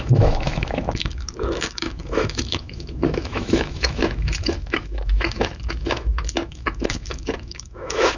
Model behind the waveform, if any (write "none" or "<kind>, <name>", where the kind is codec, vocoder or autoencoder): autoencoder, DAC-VAE